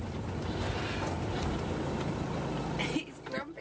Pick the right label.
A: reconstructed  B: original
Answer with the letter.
B